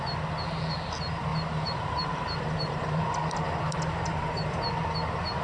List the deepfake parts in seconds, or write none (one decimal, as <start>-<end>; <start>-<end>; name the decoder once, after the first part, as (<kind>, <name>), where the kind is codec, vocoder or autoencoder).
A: 1.3-4.5 (vocoder, BigVGAN v2)